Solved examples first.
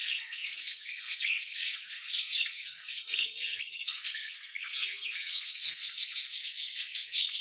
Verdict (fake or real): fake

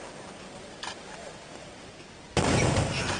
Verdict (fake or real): real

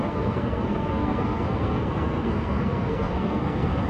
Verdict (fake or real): fake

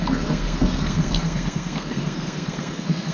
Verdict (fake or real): fake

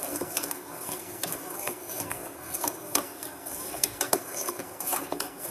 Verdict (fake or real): fake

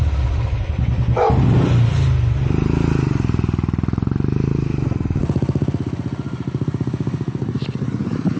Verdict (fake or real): real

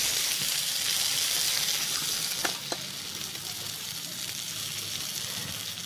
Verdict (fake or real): real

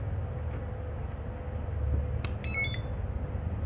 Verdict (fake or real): real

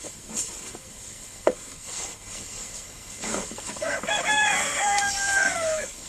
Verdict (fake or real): fake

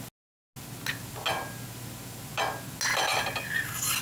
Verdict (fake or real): real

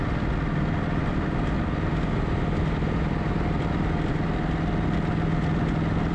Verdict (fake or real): real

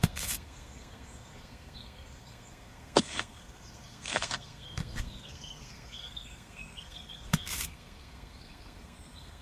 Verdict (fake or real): fake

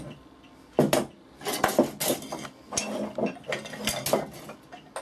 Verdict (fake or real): real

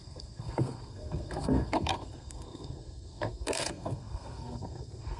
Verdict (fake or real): fake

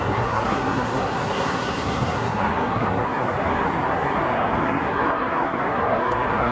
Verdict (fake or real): fake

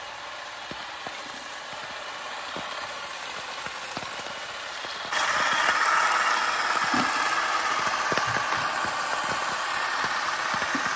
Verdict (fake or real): real